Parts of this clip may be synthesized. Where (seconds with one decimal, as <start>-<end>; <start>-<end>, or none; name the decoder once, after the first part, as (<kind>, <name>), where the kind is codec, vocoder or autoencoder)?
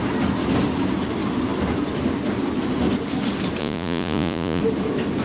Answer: 3.6-4.6 (vocoder, Vocos)